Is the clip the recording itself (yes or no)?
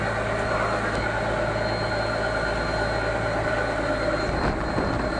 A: yes